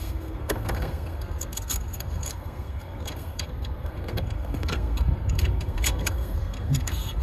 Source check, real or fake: fake